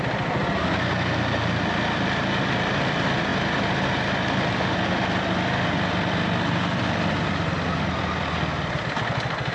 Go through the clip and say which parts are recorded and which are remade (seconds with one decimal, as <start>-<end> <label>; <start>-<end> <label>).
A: 0.0-9.5 recorded